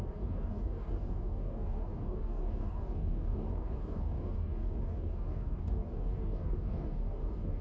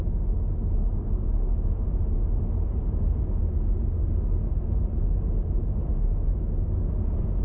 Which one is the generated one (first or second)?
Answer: first